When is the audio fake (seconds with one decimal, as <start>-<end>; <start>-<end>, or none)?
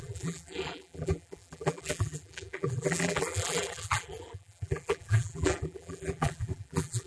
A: 0.0-7.1